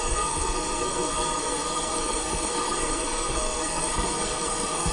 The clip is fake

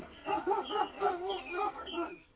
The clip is fake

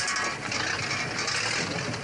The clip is real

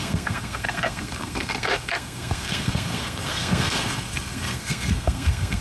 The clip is fake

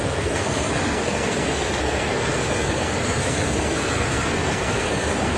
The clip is fake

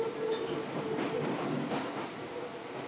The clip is real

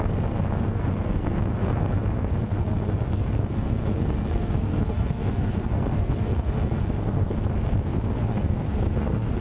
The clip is fake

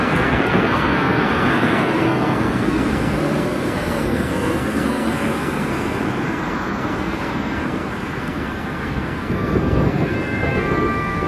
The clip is fake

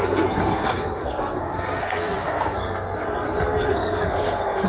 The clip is fake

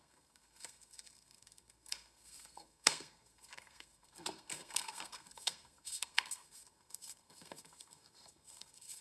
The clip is fake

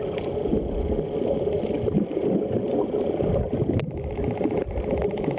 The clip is real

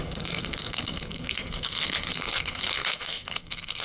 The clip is fake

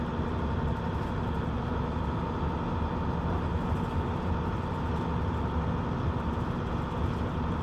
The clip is real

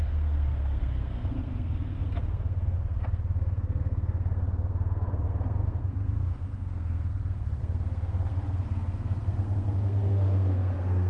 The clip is fake